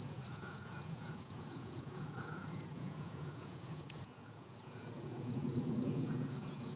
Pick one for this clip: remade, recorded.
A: remade